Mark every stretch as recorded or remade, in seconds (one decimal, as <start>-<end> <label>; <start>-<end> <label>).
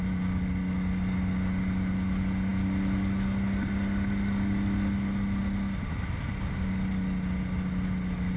0.0-8.4 recorded